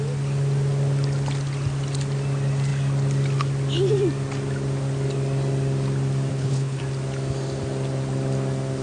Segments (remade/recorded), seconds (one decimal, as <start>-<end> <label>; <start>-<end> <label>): 0.0-6.3 recorded; 6.3-6.8 remade; 6.8-8.8 recorded